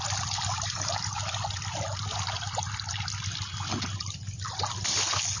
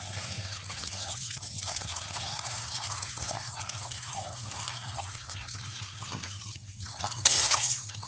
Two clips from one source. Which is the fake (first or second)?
second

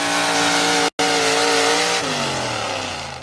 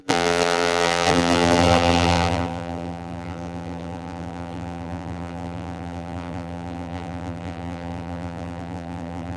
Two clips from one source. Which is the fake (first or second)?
second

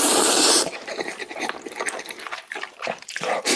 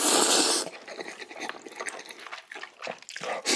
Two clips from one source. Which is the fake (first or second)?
first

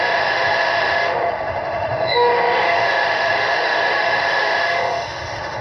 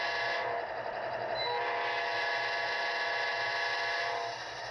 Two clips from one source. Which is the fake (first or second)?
first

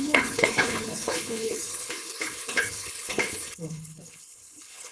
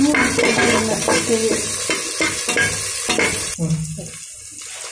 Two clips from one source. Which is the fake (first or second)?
first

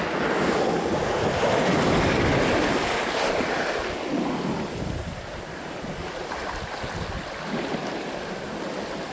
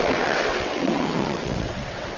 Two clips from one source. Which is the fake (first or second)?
second